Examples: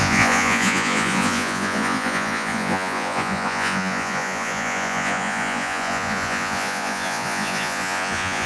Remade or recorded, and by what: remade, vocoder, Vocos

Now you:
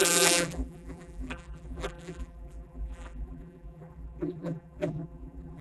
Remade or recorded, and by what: remade, vocoder, BigVGAN v2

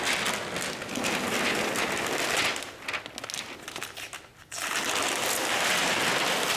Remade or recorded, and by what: recorded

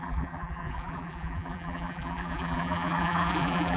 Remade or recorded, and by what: remade, vocoder, BigVGAN v2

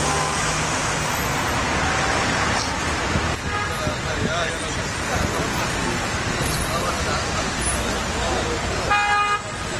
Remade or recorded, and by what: recorded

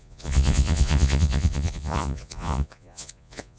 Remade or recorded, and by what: remade, vocoder, Vocos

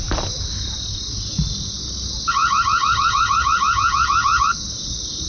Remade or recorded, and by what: recorded